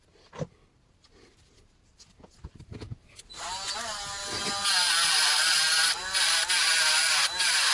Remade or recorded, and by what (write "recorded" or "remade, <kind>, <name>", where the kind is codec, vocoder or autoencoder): recorded